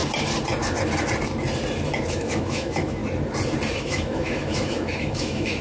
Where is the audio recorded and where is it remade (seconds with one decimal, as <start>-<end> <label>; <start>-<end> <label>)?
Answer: 0.0-2.1 recorded; 2.1-3.0 remade; 3.0-3.8 recorded; 3.8-5.6 remade